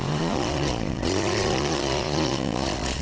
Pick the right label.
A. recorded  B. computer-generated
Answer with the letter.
B